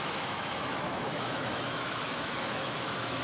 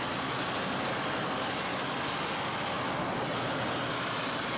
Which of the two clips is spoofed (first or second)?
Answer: first